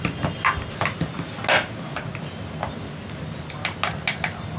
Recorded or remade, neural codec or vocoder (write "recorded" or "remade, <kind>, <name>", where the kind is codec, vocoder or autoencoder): recorded